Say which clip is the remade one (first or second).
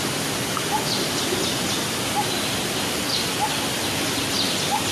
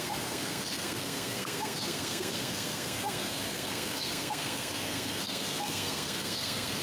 second